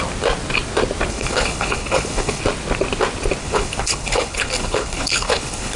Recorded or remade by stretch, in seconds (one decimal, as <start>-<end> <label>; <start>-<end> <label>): 0.0-1.1 recorded; 1.1-2.4 remade; 2.4-3.4 recorded; 3.4-5.8 remade